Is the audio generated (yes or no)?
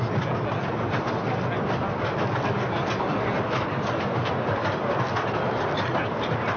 no